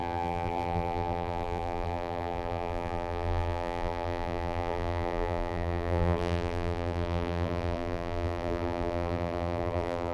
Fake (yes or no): yes